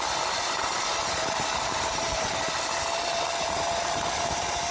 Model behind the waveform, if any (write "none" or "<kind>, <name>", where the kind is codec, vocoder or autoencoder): vocoder, BigVGAN v2